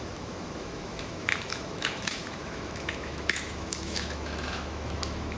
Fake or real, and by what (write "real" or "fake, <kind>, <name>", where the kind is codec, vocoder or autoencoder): fake, autoencoder, DAC-VAE